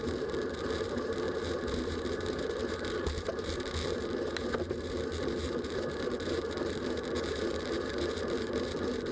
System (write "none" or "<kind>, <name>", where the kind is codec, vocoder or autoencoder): vocoder, BigVGAN v2